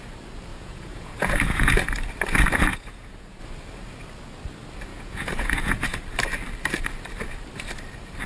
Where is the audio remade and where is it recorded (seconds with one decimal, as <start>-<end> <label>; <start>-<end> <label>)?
0.0-0.5 recorded; 0.5-1.8 remade; 1.8-2.7 recorded; 2.7-3.4 remade; 3.4-4.9 recorded; 4.9-6.0 remade; 6.0-8.3 recorded